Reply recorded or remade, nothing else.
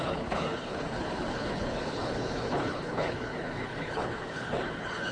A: remade